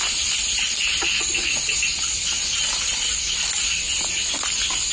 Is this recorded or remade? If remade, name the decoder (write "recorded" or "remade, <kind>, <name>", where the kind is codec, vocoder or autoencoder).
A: recorded